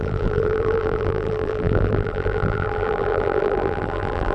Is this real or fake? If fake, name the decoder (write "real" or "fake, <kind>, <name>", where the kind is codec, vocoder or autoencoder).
fake, vocoder, BigVGAN v2